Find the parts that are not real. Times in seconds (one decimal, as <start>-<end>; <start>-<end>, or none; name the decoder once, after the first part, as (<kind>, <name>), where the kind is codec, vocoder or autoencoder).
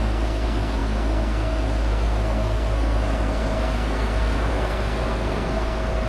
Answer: 0.0-6.1 (codec, SNAC)